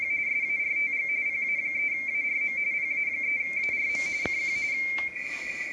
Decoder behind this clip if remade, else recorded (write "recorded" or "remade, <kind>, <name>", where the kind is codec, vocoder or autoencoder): recorded